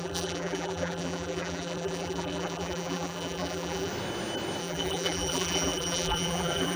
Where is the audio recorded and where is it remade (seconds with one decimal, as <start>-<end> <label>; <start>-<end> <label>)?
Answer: 0.0-3.9 remade; 3.9-4.6 recorded; 4.6-6.8 remade